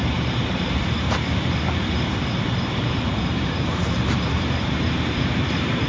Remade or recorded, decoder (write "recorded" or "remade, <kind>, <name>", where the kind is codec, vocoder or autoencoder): remade, vocoder, BigVGAN v2